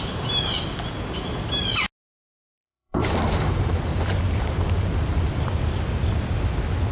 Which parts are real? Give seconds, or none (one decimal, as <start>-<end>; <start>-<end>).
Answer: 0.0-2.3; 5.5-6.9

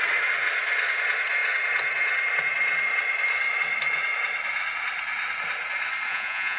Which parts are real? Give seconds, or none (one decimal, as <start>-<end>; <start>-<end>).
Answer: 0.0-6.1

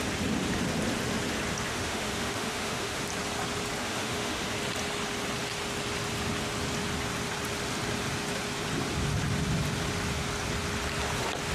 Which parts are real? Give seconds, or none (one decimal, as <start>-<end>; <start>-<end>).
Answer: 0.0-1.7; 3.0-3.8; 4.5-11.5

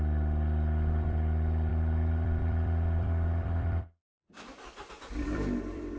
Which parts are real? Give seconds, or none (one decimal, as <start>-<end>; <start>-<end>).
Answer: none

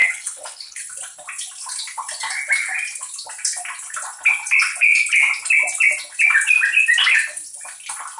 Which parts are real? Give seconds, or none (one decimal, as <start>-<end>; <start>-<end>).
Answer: 0.8-8.2

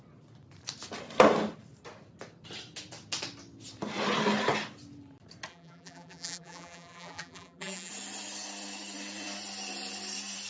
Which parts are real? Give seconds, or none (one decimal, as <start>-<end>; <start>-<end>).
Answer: 0.0-5.5; 7.9-10.5